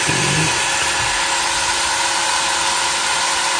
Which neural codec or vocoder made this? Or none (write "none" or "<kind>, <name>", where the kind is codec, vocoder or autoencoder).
none